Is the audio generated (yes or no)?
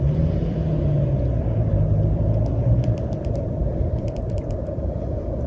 yes